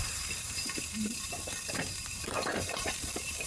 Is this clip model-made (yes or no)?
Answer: yes